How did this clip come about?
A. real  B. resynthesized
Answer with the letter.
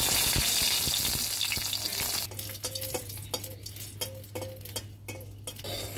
A